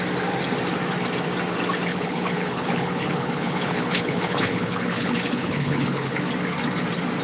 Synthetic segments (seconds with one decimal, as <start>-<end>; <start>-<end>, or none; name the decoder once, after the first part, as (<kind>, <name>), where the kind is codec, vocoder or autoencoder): 1.9-6.2 (codec, HILCodec)